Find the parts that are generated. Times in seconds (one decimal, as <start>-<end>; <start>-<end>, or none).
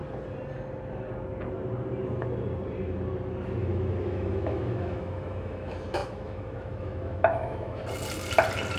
3.6-7.8